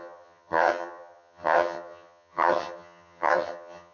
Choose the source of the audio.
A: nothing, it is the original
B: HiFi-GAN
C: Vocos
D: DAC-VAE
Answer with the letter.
B